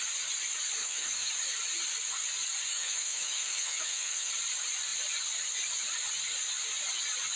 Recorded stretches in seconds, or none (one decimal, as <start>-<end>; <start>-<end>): 0.0-0.8; 1.3-2.7; 4.3-7.4